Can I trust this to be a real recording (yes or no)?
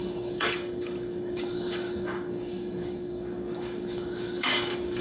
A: no